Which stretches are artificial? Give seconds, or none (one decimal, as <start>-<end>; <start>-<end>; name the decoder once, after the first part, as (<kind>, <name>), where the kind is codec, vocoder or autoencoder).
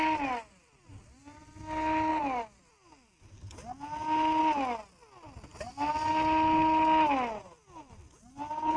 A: none